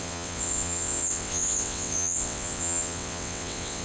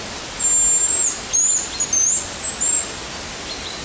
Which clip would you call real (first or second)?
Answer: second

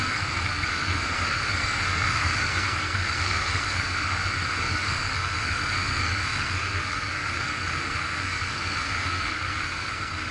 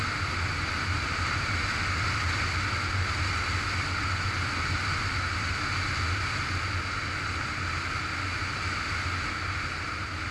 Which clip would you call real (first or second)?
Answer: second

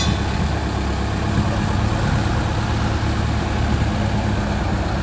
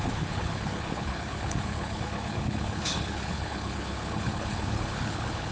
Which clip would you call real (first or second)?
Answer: first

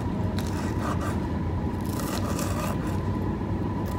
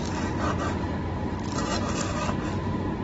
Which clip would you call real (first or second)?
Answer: second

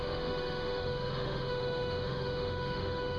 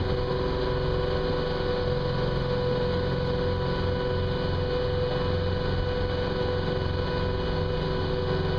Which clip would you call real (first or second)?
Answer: second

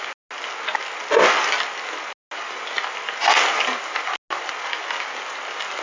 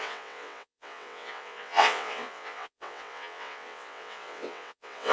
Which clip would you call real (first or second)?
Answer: first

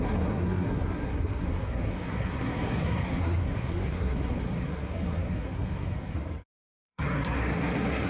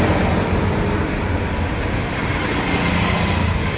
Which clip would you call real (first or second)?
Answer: second